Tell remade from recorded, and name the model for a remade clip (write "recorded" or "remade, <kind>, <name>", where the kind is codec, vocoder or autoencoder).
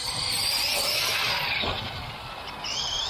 recorded